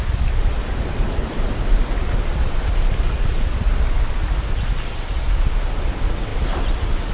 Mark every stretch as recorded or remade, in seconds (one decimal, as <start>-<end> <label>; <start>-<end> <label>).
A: 0.0-7.1 remade